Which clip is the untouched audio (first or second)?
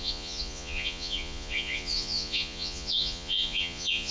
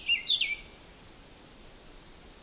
second